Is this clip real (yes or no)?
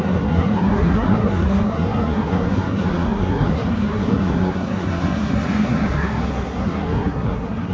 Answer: no